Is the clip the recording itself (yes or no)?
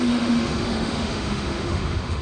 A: no